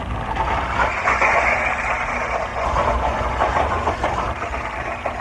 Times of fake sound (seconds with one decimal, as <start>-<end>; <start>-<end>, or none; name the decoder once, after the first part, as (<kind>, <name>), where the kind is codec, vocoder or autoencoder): 0.9-1.6 (vocoder, Vocos); 2.5-4.2